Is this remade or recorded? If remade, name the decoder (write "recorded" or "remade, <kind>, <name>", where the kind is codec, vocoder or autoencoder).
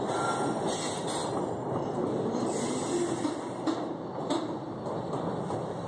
recorded